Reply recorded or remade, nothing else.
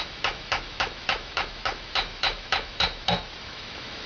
remade